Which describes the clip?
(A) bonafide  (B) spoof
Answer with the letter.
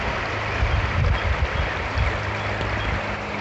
A